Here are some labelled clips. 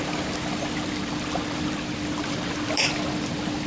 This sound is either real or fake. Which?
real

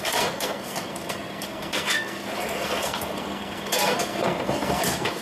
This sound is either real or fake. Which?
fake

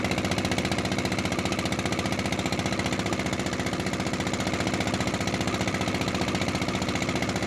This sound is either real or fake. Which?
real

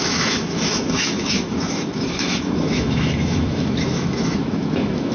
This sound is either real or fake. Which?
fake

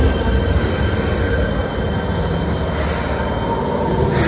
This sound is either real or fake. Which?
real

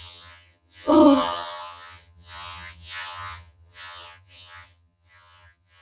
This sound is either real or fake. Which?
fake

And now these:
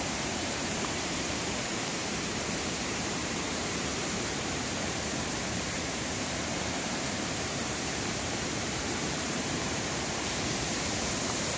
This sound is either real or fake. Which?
fake